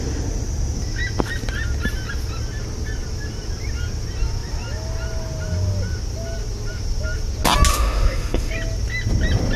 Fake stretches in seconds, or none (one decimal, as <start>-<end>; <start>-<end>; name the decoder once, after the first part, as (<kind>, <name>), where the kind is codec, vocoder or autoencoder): 7.7-8.5 (autoencoder, DAC-VAE)